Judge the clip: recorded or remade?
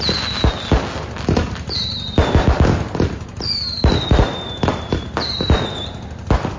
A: recorded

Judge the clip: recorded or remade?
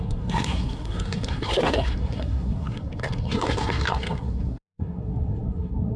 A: remade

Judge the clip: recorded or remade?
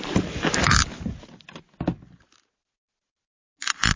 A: recorded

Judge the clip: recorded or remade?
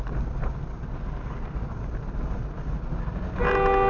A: recorded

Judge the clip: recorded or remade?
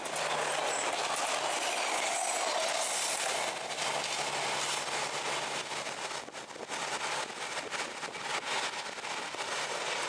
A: recorded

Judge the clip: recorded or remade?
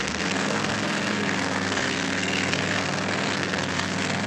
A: remade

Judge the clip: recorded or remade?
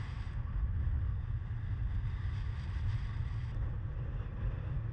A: recorded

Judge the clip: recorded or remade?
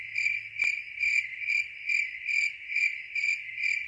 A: recorded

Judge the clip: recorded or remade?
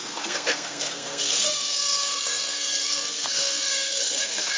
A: remade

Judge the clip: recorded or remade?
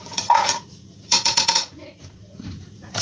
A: remade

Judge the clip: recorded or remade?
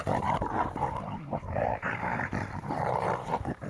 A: remade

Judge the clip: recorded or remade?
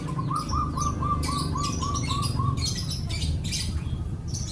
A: remade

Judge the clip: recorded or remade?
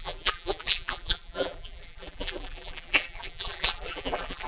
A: remade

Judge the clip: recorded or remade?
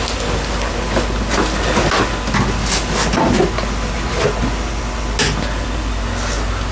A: recorded